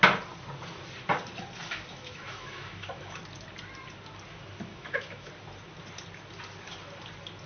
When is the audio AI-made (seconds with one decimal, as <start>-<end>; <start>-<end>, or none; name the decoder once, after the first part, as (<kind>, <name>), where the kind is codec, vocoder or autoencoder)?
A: 1.9-3.2 (autoencoder, DAC-VAE); 4.7-5.3